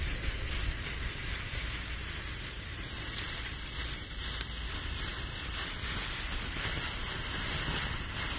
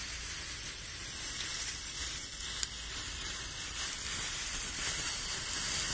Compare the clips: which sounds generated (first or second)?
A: first